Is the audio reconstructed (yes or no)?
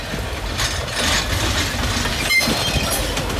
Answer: no